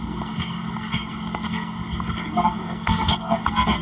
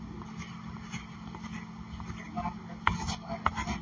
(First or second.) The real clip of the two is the second